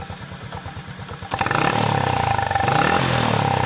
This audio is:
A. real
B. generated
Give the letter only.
A